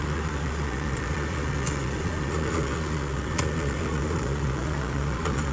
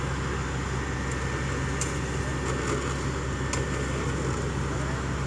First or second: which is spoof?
first